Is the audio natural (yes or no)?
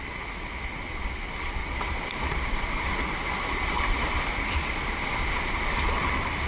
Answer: yes